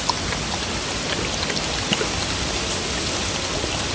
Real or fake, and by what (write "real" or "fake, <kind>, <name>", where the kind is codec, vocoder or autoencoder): real